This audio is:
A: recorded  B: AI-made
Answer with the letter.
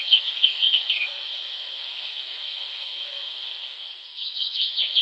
B